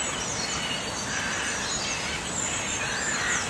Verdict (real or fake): real